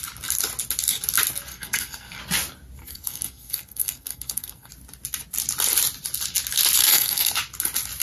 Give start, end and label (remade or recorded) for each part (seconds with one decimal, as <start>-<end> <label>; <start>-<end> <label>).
0.0-1.5 recorded; 1.5-2.2 remade; 2.2-2.8 recorded; 2.8-4.7 remade; 4.7-6.8 recorded; 6.8-7.3 remade; 7.3-8.0 recorded